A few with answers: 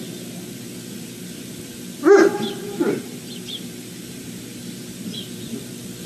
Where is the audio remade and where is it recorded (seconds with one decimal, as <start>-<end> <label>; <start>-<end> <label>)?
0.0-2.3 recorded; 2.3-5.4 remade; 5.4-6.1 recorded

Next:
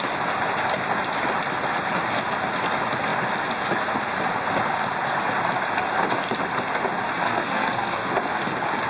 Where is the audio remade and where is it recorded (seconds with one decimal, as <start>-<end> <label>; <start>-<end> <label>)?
0.0-7.2 recorded; 7.2-8.1 remade; 8.1-8.9 recorded

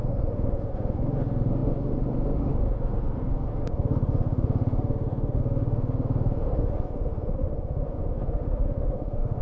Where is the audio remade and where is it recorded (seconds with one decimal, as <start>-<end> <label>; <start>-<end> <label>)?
0.0-9.4 remade

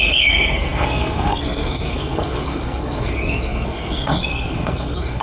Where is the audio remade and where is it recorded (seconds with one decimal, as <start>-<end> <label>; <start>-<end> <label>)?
0.0-5.2 remade

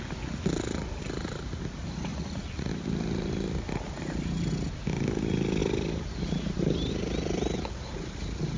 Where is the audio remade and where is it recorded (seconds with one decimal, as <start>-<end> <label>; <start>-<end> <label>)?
0.0-2.1 recorded; 2.1-2.7 remade; 2.7-8.6 recorded